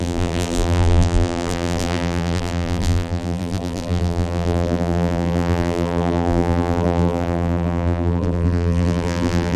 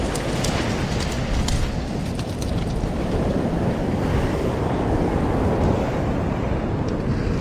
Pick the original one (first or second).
second